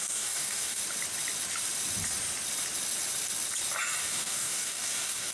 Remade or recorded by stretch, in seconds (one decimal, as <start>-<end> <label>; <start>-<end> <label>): 0.0-0.8 remade; 0.8-4.0 recorded; 4.0-5.3 remade